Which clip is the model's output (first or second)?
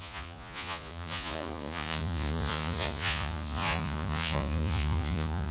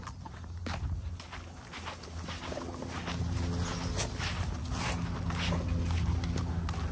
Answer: first